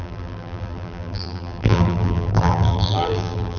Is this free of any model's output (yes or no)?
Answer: no